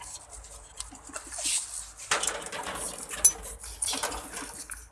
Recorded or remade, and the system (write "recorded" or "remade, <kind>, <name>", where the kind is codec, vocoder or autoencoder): recorded